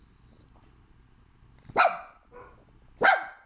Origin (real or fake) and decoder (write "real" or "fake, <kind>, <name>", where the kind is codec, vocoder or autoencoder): real